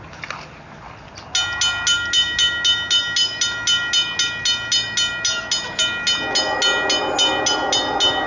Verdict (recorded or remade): recorded